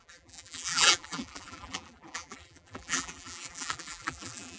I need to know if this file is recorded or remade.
remade